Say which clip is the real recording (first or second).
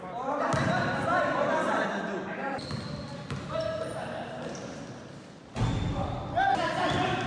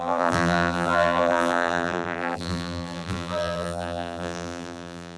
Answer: first